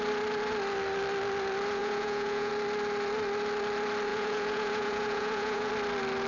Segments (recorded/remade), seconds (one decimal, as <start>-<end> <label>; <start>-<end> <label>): 0.0-1.8 recorded; 1.8-2.5 remade; 2.5-4.1 recorded; 4.1-5.7 remade; 5.7-6.3 recorded